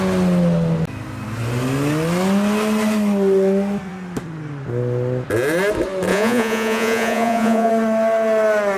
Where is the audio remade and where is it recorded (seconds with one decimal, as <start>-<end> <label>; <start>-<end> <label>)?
0.0-6.1 recorded; 6.1-7.7 remade; 7.7-8.8 recorded

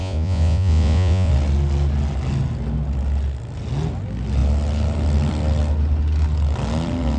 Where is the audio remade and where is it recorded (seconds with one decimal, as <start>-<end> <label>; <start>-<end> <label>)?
0.0-1.3 remade; 1.3-7.2 recorded

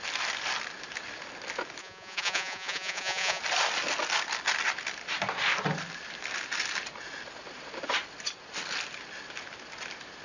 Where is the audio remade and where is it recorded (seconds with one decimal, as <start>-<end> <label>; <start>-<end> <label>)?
0.0-1.8 recorded; 1.8-3.4 remade; 3.4-10.2 recorded

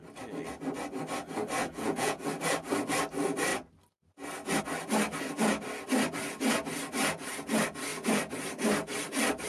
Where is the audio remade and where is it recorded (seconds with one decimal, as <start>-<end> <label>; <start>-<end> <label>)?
0.0-1.6 recorded; 1.6-2.3 remade; 2.3-9.5 recorded